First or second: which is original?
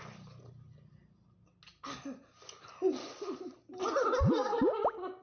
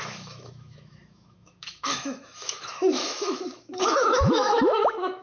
first